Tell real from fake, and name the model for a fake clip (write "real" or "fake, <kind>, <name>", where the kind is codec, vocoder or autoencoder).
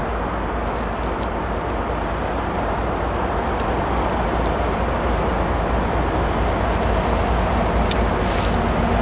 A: real